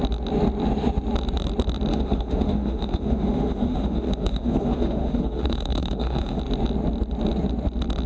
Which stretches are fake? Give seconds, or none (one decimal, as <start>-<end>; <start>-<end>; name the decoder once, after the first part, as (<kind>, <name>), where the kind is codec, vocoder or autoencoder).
1.9-6.4 (autoencoder, DAC-VAE)